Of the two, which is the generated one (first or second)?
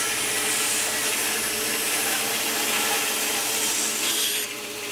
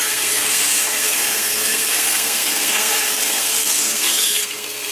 second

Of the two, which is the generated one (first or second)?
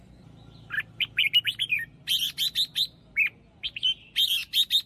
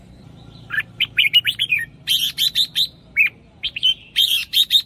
second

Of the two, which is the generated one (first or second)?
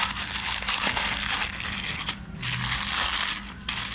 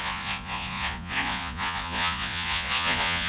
second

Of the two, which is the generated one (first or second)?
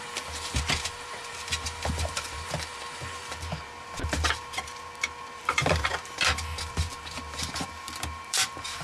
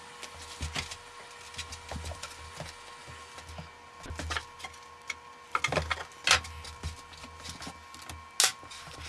first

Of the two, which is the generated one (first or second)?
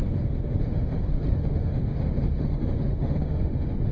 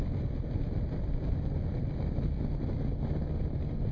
first